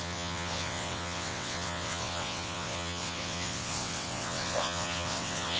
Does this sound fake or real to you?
fake